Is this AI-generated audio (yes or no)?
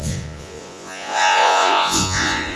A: yes